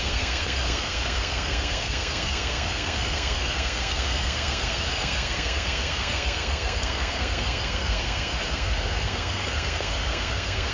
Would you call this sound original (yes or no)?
no